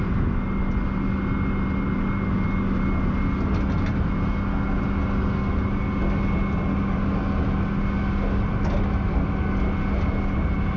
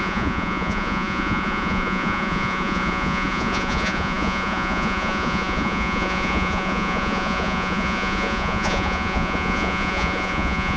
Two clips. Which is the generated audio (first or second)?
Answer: second